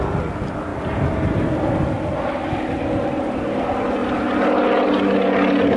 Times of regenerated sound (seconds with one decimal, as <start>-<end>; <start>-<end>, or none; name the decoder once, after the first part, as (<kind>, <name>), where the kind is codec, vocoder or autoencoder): none